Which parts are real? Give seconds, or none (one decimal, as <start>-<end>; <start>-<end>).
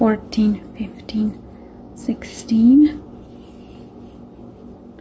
0.0-1.6; 2.5-5.0